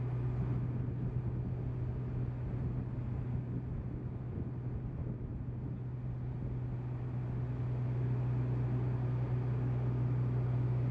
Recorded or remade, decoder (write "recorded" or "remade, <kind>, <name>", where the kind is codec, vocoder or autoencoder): recorded